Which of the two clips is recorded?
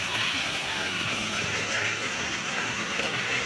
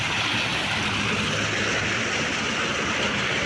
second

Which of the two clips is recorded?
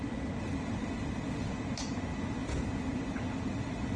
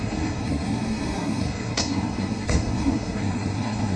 first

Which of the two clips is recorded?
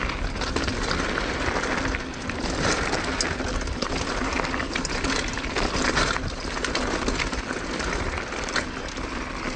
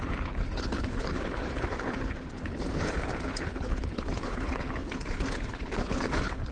first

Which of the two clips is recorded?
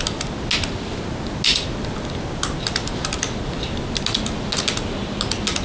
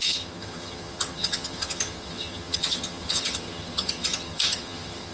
first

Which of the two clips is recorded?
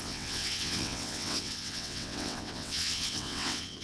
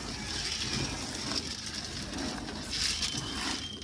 second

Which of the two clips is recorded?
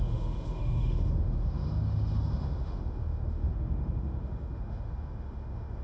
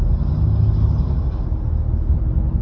second